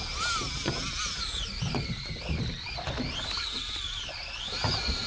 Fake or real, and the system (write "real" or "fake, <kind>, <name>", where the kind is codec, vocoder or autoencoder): real